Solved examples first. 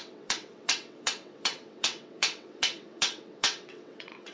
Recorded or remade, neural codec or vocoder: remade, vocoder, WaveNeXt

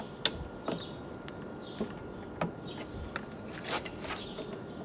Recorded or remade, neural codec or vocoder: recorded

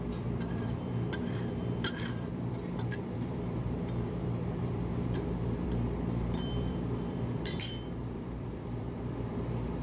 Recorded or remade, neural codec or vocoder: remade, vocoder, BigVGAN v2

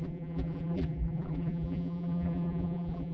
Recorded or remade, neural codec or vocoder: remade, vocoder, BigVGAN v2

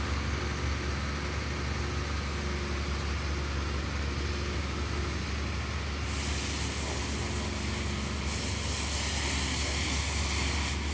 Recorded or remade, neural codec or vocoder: recorded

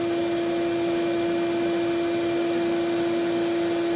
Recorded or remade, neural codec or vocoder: recorded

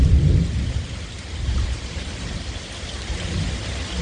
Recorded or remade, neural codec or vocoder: recorded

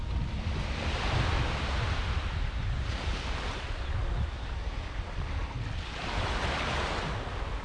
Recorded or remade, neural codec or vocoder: recorded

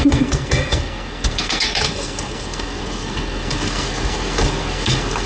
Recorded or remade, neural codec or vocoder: remade, codec, SNAC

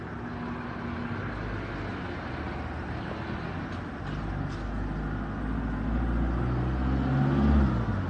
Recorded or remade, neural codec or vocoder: recorded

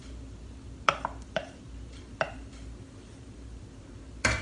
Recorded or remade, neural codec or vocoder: remade, vocoder, BigVGAN v2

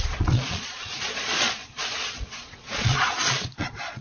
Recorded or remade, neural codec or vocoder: remade, vocoder, Vocos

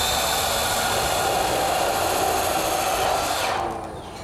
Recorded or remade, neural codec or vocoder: recorded